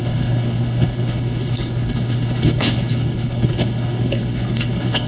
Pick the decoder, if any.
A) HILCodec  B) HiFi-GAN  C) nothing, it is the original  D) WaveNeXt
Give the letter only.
A